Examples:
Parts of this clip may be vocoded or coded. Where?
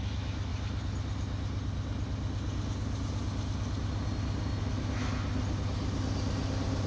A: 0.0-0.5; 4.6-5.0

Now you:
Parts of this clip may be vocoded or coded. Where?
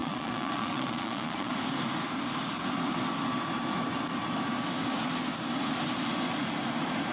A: 0.0-1.5